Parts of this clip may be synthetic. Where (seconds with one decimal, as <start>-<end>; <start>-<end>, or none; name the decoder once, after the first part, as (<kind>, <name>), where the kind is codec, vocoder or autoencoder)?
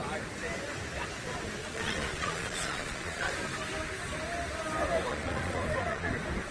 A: 1.6-3.3 (vocoder, Vocos); 5.1-6.1